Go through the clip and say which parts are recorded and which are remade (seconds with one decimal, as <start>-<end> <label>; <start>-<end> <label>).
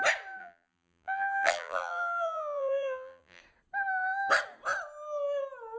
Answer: 0.0-0.4 recorded; 0.4-3.4 remade; 3.4-5.8 recorded